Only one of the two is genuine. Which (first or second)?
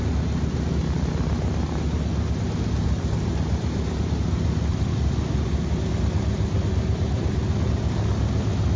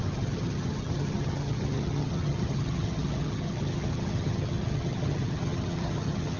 first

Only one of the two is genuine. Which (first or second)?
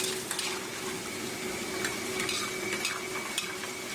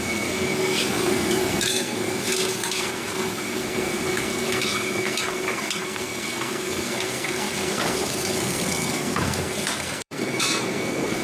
first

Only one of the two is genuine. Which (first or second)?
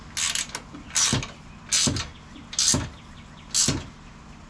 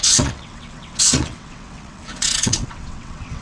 first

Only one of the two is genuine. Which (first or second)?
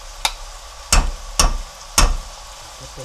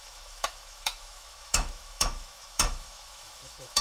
first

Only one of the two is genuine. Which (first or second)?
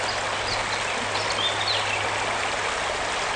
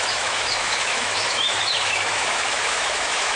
first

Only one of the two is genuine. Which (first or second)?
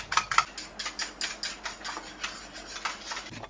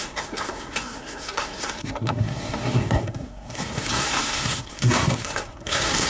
first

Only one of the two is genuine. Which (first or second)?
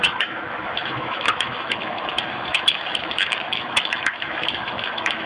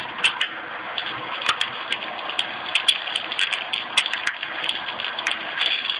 second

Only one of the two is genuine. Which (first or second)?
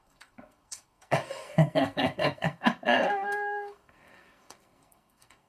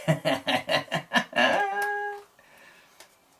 second